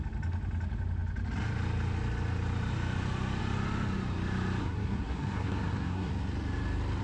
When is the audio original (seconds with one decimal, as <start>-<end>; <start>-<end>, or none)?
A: 0.0-4.6; 6.1-7.0